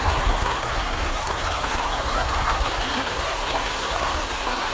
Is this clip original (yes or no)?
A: no